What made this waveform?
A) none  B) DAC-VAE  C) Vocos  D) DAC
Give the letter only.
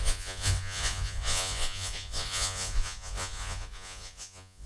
C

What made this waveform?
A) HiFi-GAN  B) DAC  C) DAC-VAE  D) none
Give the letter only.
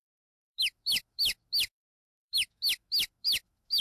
C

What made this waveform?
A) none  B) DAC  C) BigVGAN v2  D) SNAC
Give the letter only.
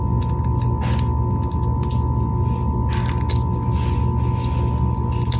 A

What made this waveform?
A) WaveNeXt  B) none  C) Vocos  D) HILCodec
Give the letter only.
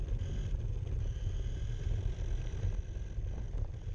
B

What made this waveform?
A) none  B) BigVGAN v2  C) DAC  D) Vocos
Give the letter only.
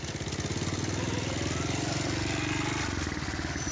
A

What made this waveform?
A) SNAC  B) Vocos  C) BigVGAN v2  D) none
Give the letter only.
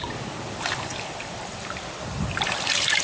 C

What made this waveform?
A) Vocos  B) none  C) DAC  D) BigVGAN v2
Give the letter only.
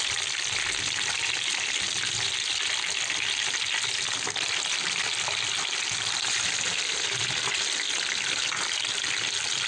B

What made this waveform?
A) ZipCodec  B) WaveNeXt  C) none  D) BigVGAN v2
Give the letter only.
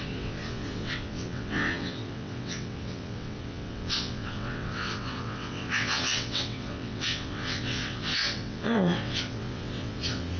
B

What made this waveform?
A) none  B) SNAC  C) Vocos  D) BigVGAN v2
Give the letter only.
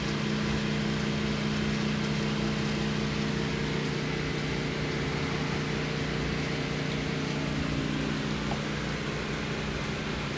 A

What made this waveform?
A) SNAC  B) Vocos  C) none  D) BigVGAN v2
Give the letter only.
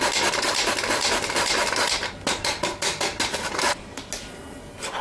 C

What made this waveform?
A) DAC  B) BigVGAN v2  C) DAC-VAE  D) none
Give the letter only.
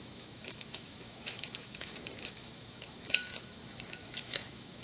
C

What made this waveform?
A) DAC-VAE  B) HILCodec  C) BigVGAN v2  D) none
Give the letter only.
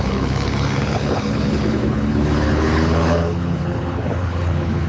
B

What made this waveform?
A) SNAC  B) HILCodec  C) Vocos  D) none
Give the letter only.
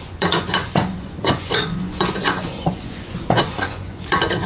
C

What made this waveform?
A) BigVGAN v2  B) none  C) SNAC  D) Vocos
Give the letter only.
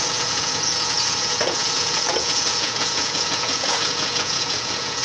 D